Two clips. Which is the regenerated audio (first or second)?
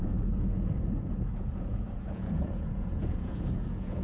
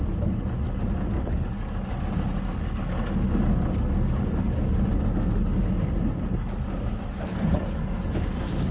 first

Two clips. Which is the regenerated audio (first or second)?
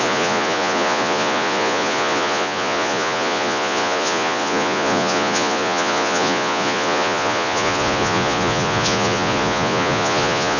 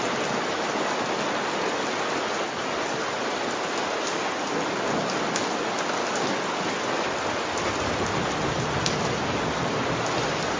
first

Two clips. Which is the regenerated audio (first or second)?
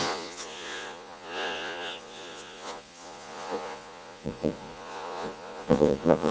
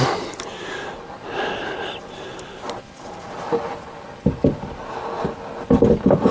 first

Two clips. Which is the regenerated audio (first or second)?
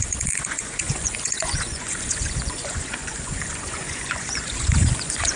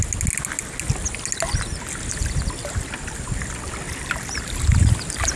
first